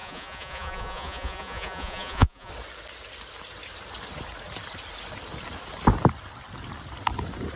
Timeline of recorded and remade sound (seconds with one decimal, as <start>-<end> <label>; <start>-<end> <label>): 0.0-2.5 remade; 2.5-7.6 recorded